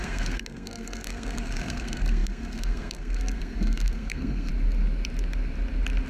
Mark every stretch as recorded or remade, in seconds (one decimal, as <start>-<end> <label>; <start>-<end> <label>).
0.0-4.5 remade; 4.5-6.1 recorded